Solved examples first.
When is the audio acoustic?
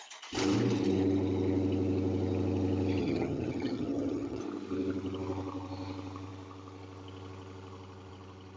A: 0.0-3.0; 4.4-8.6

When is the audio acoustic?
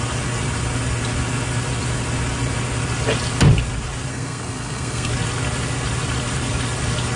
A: 0.0-4.1; 5.1-7.2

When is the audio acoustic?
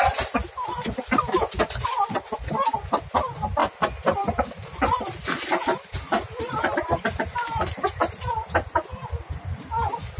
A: 0.0-3.6; 8.3-10.2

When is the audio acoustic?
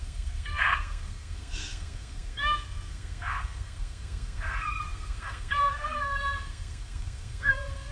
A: none